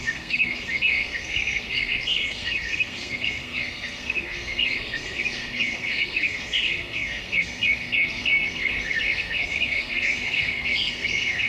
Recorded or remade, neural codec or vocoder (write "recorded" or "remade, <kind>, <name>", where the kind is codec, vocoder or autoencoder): remade, codec, SNAC